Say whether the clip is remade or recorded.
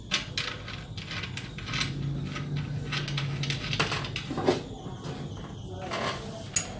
recorded